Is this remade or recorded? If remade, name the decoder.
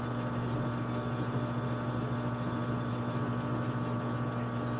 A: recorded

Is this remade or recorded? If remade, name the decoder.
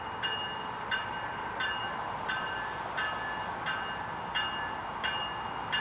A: recorded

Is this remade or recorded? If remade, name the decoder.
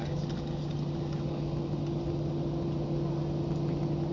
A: recorded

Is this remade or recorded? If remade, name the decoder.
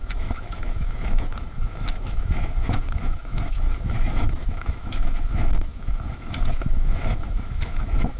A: remade, autoencoder, DAC-VAE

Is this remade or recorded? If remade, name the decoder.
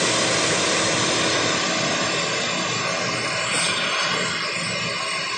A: recorded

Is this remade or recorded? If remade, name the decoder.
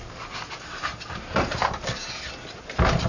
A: recorded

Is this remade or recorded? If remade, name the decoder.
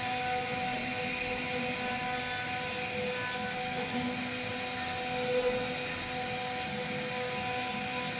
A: recorded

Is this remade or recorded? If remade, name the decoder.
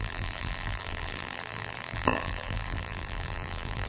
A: remade, vocoder, BigVGAN v2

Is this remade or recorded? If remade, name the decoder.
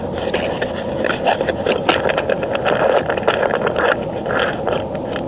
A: recorded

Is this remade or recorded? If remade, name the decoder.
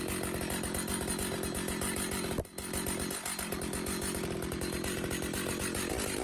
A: recorded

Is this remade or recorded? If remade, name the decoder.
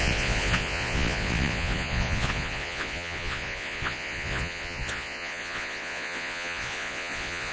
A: remade, vocoder, Vocos